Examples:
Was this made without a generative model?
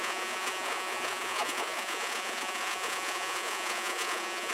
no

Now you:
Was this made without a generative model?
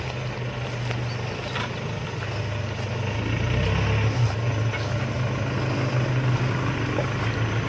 yes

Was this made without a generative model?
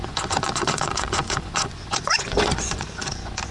no